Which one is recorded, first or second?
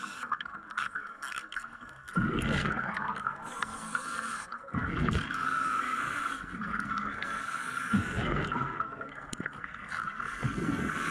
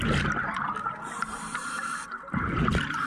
second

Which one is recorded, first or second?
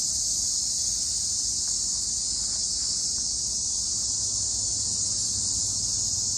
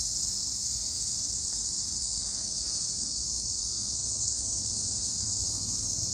first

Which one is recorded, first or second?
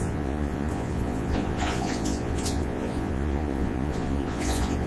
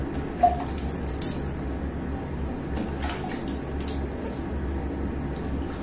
second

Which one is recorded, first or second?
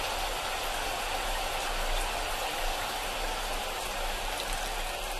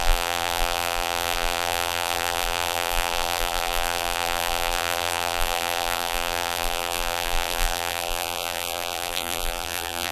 first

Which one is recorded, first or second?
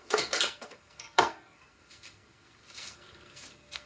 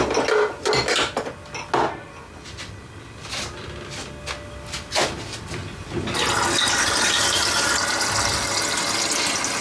second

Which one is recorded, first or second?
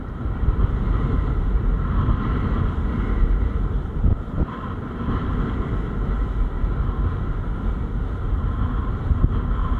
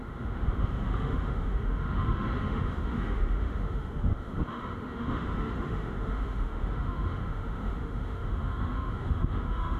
first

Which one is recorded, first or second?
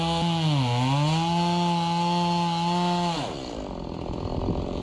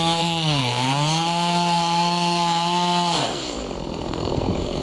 first